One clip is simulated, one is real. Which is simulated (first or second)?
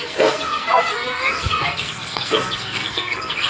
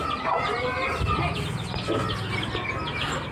first